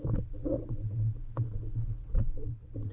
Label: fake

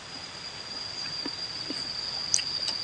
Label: real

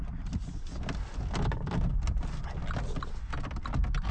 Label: real